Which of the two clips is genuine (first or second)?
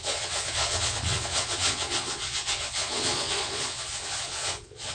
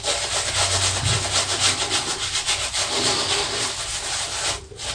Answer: second